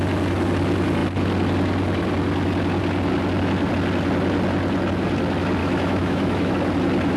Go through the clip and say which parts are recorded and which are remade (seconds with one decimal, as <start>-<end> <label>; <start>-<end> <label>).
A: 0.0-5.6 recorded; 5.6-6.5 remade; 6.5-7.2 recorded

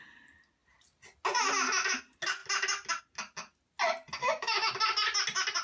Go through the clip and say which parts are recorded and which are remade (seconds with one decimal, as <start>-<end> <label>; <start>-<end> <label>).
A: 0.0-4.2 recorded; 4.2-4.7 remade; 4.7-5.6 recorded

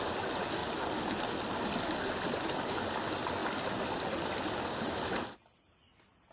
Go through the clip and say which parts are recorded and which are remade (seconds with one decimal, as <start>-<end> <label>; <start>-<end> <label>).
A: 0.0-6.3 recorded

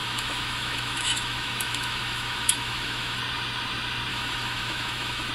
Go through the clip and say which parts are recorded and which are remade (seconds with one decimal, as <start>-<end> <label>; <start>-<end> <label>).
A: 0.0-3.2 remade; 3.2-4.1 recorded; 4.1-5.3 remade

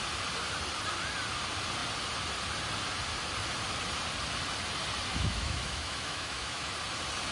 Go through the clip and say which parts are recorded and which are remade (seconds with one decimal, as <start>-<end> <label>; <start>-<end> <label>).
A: 0.0-5.1 recorded; 5.1-6.7 remade; 6.7-7.3 recorded

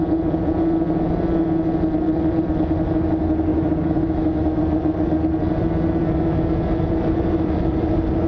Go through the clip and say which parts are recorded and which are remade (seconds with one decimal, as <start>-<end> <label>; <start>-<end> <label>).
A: 0.0-3.5 recorded; 3.5-4.6 remade; 4.6-8.3 recorded

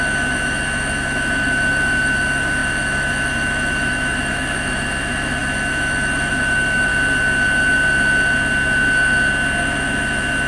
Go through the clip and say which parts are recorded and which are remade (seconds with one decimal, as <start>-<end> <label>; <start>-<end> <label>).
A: 0.0-6.9 remade; 6.9-9.6 recorded; 9.6-10.5 remade

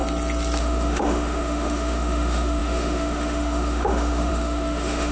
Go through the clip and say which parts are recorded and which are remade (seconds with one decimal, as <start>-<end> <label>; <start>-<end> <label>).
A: 0.0-0.6 recorded; 0.6-5.1 remade